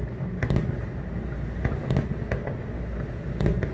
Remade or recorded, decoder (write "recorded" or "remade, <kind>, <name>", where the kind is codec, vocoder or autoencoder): recorded